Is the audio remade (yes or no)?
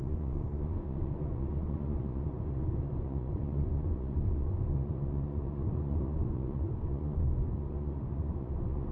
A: yes